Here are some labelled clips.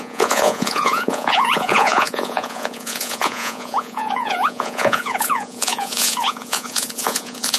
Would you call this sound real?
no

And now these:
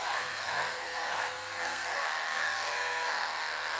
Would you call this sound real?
no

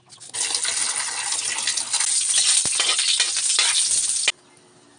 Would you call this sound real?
yes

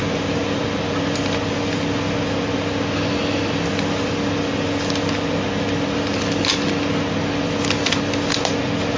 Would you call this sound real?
yes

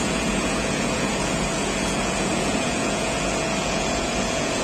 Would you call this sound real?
no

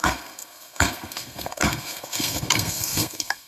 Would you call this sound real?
no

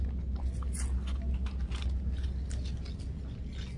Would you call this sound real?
yes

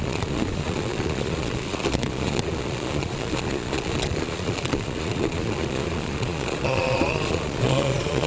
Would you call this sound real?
no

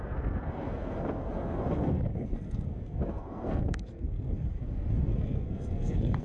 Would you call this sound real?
no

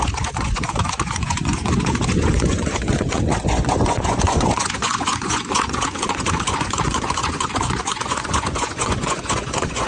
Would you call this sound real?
no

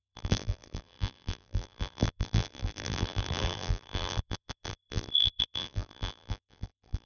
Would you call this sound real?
no